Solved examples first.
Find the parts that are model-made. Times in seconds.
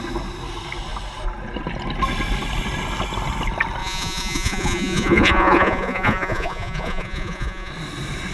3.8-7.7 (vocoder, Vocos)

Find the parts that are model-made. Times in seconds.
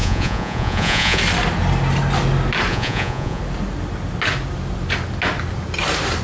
0.0-1.2 (vocoder, Vocos); 2.7-3.4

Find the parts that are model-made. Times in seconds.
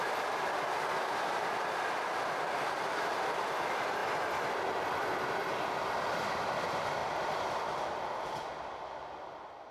none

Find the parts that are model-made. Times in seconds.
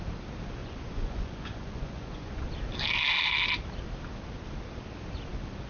0.6-2.5 (vocoder, Vocos)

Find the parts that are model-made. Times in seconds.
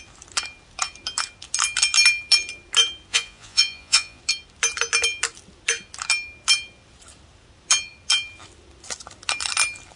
3.1-4.2 (vocoder, Vocos)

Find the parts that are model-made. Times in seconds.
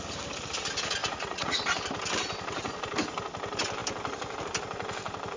1.0-1.6 (vocoder, Vocos)